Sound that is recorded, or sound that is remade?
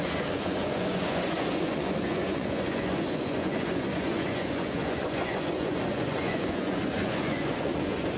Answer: remade